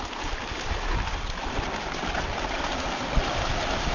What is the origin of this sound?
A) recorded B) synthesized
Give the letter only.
A